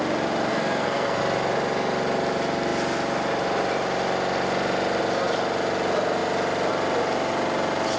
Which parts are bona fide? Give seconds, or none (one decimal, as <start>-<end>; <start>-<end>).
0.0-0.5; 1.2-8.0